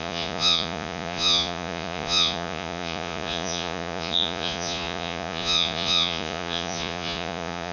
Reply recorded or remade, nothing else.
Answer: remade